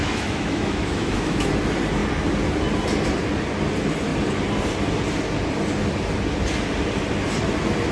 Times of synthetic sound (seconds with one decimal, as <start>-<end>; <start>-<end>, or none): 0.0-1.5